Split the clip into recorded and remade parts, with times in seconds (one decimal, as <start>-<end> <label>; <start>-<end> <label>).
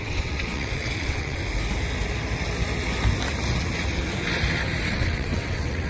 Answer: 0.0-1.4 remade; 1.4-4.9 recorded; 4.9-5.9 remade